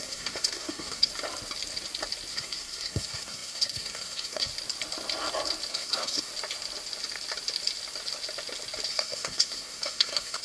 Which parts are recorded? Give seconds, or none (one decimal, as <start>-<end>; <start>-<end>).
1.1-2.3; 4.5-5.7; 6.3-8.9